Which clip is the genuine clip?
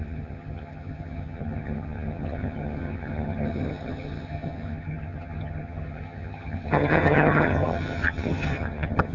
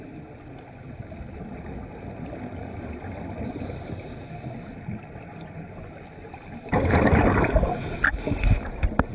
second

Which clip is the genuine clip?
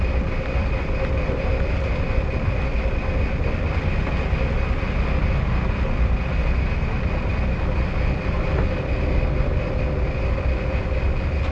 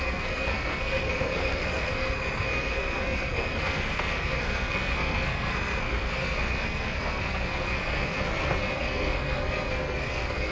first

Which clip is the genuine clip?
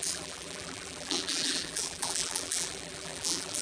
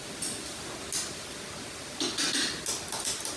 second